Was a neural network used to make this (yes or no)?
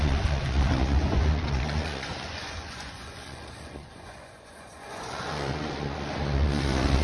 yes